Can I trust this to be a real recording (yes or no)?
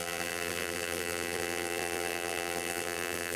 no